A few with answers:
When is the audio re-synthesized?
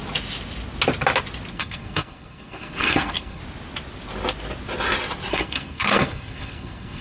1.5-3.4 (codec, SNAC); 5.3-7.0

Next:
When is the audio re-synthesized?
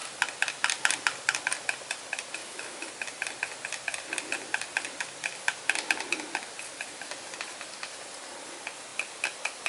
2.4-2.9 (autoencoder, DAC-VAE)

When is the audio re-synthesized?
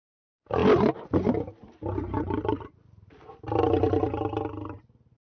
none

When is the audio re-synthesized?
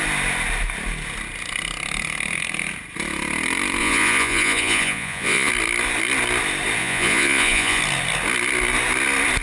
3.8-5.5 (vocoder, Vocos); 6.8-7.8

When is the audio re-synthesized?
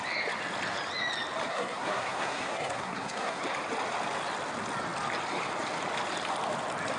1.5-3.4 (codec, SNAC)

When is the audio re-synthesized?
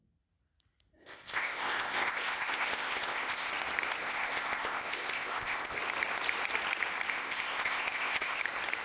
1.0-3.5 (codec, ZipCodec); 4.0-5.8; 7.1-8.4